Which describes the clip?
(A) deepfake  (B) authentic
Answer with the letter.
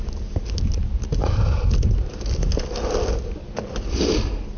B